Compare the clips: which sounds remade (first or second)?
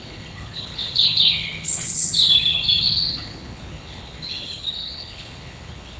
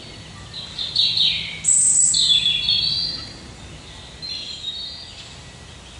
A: first